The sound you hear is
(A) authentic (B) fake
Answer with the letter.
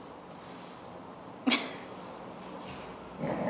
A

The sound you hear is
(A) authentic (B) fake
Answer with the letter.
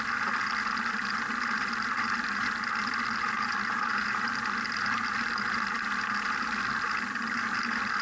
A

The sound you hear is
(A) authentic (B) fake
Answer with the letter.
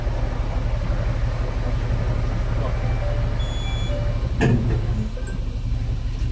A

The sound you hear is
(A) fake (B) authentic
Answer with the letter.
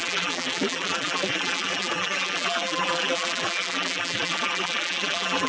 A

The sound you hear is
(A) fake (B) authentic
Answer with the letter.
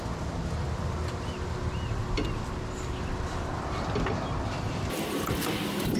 B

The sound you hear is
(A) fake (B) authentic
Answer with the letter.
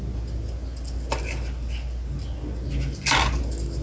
B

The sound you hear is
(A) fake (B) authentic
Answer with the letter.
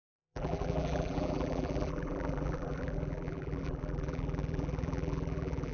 A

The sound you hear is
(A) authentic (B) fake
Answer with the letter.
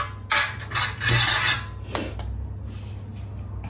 A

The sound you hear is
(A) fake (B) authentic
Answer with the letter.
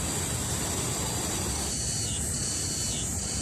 B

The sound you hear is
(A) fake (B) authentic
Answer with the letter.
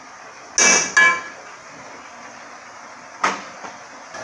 B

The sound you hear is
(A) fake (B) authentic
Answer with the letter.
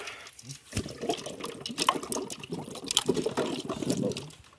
B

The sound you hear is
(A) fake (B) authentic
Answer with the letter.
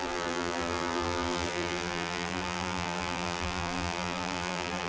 A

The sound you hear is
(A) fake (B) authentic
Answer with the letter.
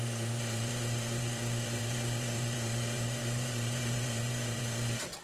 A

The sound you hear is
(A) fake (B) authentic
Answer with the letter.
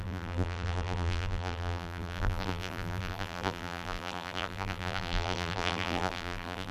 A